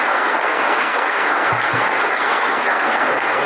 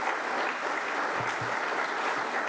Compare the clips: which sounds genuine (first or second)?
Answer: second